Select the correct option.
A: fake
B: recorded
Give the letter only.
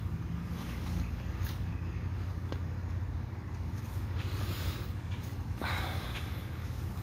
A